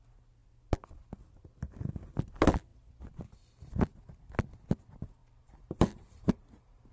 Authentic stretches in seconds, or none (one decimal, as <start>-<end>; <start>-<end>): 0.0-5.2